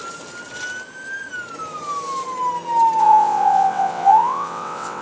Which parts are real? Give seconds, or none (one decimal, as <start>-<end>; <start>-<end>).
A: 0.0-3.0

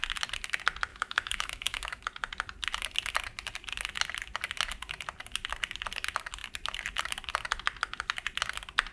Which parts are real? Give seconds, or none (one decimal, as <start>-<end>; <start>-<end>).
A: 0.0-0.9; 2.0-8.9

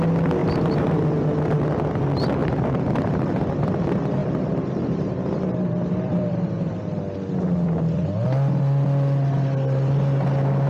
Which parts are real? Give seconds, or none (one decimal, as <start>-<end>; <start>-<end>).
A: 0.0-0.4; 1.0-2.4; 3.7-4.2; 6.2-10.7

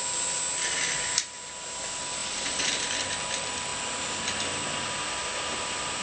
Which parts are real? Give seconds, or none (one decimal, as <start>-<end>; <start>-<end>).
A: 0.0-2.2; 2.8-6.0

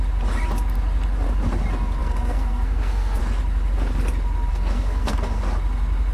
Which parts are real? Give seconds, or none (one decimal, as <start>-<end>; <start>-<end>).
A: 0.0-2.0; 3.2-4.5; 5.4-6.1

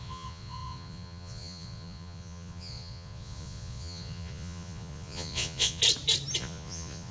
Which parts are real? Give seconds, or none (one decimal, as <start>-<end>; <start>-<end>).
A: 5.8-6.4

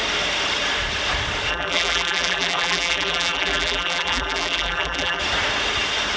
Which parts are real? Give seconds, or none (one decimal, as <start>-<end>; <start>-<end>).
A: 0.0-1.5; 5.2-6.2

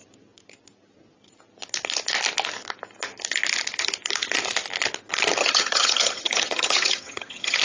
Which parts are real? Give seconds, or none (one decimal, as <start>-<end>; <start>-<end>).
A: 0.0-5.4